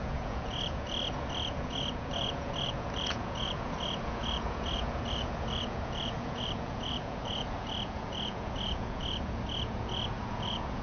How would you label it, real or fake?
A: fake